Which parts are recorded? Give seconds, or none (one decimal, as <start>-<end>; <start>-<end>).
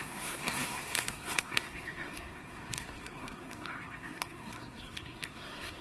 none